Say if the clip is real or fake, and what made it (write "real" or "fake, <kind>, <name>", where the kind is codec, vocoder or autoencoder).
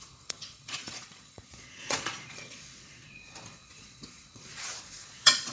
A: fake, vocoder, Vocos